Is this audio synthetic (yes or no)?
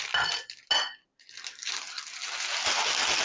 no